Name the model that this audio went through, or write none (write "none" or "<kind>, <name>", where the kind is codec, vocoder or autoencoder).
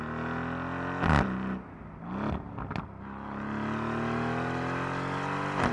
none